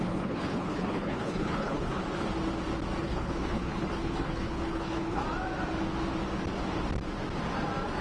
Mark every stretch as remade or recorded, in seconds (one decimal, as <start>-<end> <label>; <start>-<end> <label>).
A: 0.0-2.0 remade; 2.0-3.0 recorded; 3.0-5.2 remade; 5.2-8.0 recorded